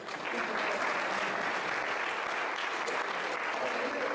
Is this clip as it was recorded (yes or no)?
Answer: yes